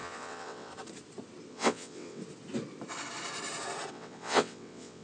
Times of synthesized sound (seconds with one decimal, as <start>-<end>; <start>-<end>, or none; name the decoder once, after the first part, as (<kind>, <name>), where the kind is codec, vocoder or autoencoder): 0.0-0.7 (vocoder, WaveNeXt); 1.5-2.2; 3.9-5.0